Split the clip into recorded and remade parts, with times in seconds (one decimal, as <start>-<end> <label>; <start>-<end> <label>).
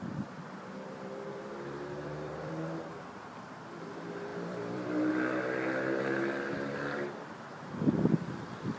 0.0-8.8 remade